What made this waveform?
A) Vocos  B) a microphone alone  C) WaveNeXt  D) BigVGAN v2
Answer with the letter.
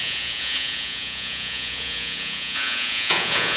A